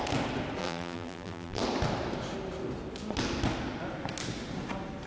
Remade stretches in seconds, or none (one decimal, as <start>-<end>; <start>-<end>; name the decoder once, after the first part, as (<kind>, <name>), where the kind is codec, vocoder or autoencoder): 0.6-1.6 (vocoder, BigVGAN v2)